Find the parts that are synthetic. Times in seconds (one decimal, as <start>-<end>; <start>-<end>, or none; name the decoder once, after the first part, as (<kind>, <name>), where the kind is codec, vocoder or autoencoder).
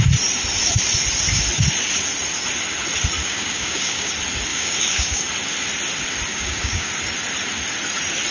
3.2-4.1 (codec, DAC); 4.5-5.2; 6.3-6.9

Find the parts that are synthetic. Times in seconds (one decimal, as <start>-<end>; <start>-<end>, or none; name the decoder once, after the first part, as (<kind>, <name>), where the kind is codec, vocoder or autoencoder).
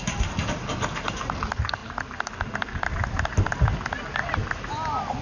none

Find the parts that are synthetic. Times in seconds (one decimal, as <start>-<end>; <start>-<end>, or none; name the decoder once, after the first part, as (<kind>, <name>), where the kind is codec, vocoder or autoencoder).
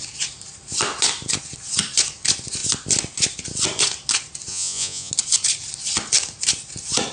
4.5-5.1 (vocoder, Vocos)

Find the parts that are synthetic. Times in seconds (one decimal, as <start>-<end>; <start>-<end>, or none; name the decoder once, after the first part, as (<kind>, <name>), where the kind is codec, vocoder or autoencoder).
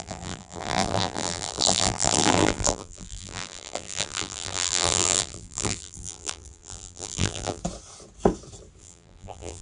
0.0-7.6 (vocoder, BigVGAN v2); 8.8-9.6